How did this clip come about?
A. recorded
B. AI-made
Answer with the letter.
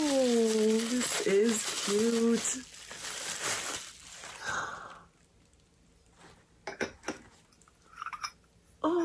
A